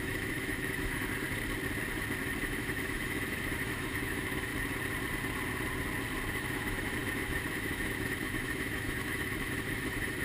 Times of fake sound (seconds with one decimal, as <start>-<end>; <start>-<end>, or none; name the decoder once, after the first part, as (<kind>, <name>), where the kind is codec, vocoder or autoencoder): 0.0-1.1 (autoencoder, DAC-VAE); 2.4-4.5; 6.3-10.2